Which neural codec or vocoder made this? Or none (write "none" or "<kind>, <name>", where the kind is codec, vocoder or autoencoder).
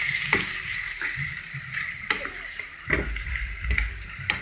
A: vocoder, BigVGAN v2